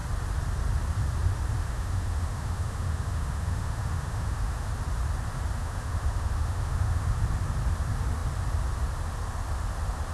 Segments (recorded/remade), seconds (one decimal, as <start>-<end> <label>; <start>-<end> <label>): 0.0-1.6 recorded; 1.6-4.7 remade; 4.7-5.6 recorded; 5.6-7.2 remade; 7.2-10.1 recorded